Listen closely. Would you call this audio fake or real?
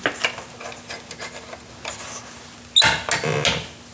real